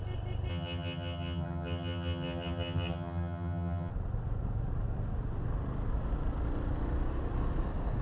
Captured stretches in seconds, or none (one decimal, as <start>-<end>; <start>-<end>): 0.0-0.5; 3.9-8.0

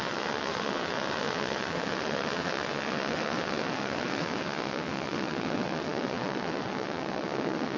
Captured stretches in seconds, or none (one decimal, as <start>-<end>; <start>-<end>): none

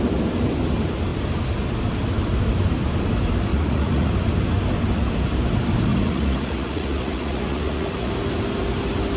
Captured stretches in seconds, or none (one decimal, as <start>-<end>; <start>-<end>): 0.0-3.5; 4.1-5.9; 8.1-9.2

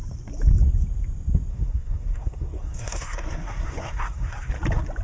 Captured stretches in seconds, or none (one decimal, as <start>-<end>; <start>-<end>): 0.0-1.5; 4.5-5.0

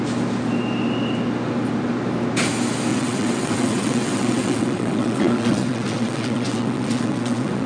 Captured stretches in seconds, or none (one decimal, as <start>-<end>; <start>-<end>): 0.0-2.9

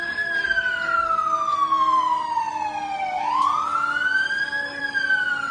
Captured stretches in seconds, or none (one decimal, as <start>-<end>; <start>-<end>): 0.0-5.5

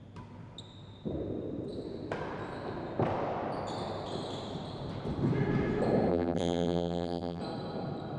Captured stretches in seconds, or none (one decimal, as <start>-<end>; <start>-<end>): 0.0-6.1; 7.4-8.2